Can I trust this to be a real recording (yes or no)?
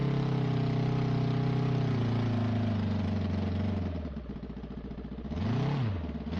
yes